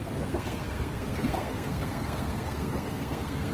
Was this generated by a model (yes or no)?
yes